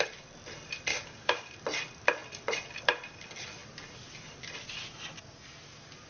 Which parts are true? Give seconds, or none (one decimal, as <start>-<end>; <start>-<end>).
0.0-0.9; 1.5-6.1